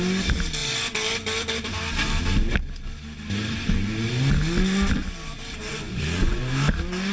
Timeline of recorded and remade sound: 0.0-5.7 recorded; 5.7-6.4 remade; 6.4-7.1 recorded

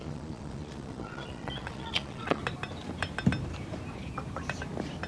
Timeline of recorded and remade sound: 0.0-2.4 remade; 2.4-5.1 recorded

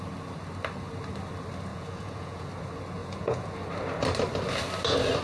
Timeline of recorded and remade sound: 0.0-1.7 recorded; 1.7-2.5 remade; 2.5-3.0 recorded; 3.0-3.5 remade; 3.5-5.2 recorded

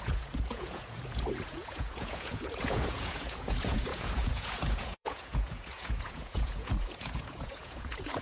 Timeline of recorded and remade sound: 0.0-8.2 remade

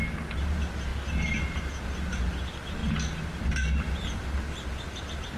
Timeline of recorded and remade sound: 0.0-5.4 recorded

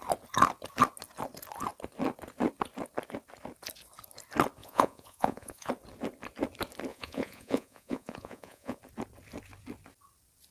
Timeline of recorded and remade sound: 0.0-4.6 recorded; 4.6-5.7 remade; 5.7-6.9 recorded; 6.9-8.8 remade; 8.8-10.5 recorded